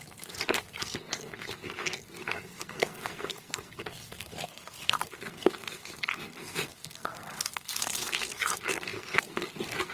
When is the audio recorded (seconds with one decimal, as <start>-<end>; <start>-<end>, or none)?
none